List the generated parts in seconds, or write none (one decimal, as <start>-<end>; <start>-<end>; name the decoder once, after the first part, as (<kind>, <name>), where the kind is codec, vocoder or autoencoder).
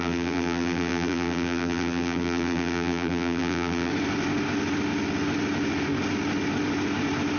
0.0-3.9 (vocoder, BigVGAN v2)